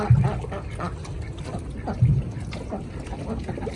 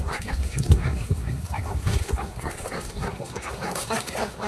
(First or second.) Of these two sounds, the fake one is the second